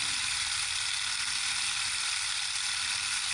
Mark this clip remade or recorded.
recorded